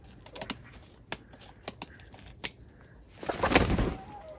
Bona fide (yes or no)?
yes